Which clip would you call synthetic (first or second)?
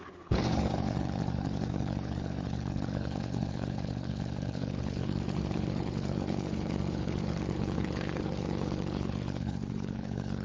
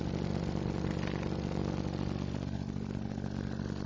first